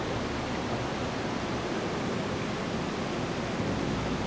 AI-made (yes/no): no